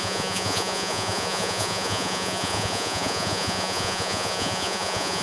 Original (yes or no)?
no